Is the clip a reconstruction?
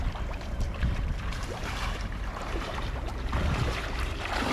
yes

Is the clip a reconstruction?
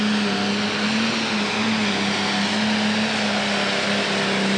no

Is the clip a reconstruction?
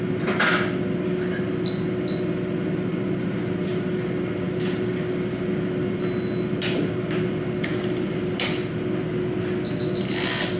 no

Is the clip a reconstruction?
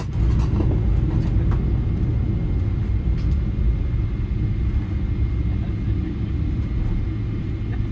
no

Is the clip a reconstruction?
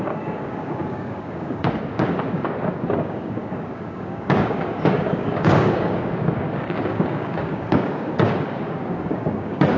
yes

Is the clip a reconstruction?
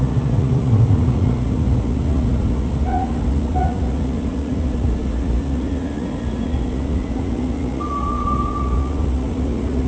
yes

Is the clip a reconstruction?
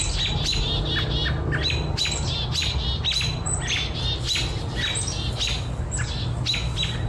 no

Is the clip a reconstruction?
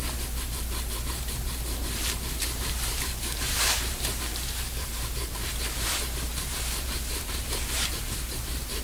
yes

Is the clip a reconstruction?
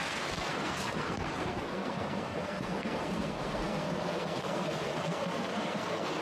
yes